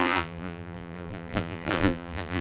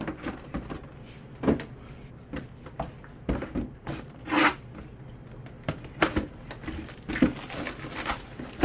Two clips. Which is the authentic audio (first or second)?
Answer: second